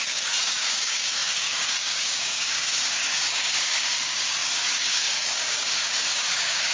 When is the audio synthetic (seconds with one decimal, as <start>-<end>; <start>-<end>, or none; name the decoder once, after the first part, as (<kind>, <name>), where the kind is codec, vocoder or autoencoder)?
0.0-6.7 (codec, DAC)